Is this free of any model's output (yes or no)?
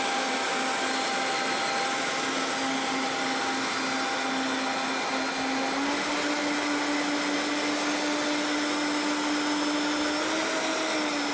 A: yes